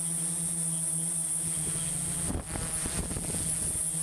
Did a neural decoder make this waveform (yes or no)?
no